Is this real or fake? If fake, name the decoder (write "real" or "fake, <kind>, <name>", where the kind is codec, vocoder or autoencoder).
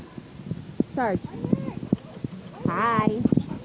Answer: real